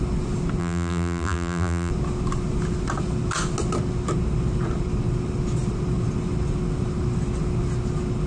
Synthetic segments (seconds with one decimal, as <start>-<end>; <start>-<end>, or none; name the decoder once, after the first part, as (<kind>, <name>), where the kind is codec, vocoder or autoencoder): 0.6-1.9 (vocoder, BigVGAN v2)